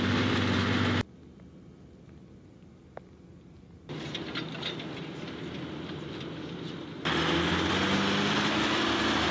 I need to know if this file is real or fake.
real